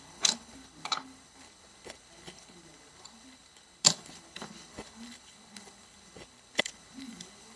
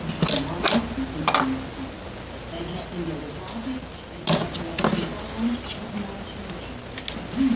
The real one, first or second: second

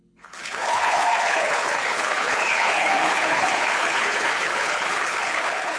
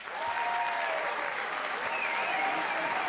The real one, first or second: second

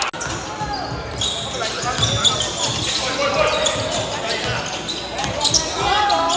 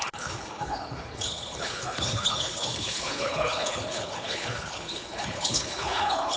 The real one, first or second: first